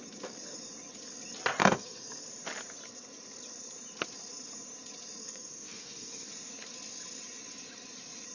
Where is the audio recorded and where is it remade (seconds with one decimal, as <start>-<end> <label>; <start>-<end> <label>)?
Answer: 0.0-1.6 recorded; 1.6-2.2 remade; 2.2-5.2 recorded; 5.2-6.3 remade; 6.3-8.3 recorded

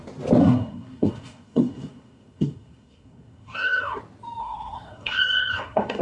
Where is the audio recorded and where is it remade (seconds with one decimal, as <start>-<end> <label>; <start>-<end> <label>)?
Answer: 0.0-0.4 recorded; 0.4-4.0 remade; 4.0-4.4 recorded; 4.4-6.0 remade

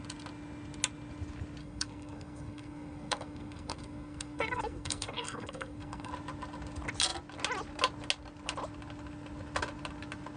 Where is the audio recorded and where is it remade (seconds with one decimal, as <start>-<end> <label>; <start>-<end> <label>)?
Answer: 0.0-1.6 recorded; 1.6-6.1 remade; 6.1-10.4 recorded

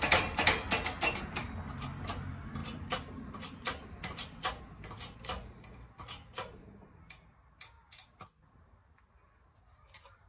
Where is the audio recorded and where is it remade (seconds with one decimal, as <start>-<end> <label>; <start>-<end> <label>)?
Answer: 0.0-10.3 recorded

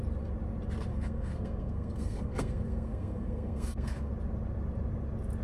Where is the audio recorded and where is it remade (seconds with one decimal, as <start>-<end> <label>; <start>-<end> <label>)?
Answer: 0.0-0.9 recorded; 0.9-4.1 remade; 4.1-5.4 recorded

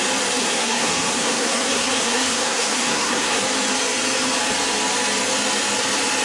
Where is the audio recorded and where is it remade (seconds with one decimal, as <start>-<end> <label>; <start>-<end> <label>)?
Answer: 0.0-0.4 recorded; 0.4-3.4 remade; 3.4-6.2 recorded